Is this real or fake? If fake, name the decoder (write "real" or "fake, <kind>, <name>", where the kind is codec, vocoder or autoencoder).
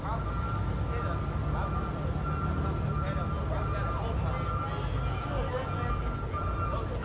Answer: real